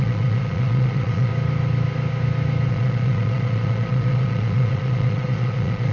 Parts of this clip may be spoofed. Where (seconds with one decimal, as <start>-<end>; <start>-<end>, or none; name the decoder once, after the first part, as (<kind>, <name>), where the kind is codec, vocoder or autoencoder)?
0.0-1.3 (vocoder, Vocos); 2.7-5.9